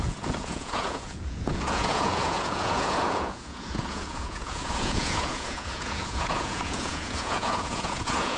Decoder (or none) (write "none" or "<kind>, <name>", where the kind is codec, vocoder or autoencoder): vocoder, Vocos